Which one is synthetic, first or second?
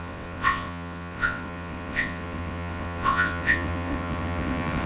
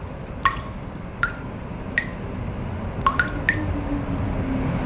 first